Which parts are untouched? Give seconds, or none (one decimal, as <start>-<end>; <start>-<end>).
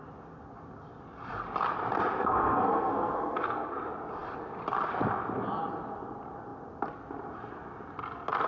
0.0-2.2; 3.8-8.5